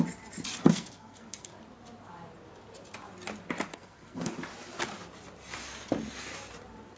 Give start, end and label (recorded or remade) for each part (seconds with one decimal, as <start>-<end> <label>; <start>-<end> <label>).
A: 0.0-0.6 recorded; 0.6-1.5 remade; 1.5-3.7 recorded; 3.7-4.3 remade; 4.3-7.0 recorded